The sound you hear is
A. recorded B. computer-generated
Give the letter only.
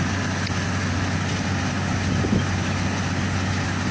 A